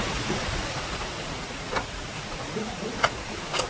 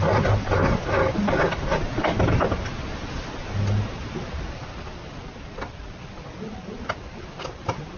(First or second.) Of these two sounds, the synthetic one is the first